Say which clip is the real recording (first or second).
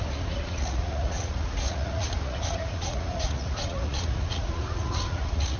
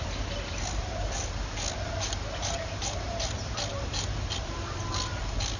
second